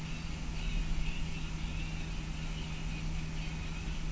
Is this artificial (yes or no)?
no